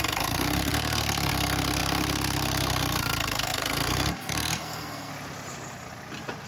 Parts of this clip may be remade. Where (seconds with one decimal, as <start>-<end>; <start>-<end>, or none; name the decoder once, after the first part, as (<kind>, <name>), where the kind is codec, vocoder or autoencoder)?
0.0-5.1 (codec, SNAC)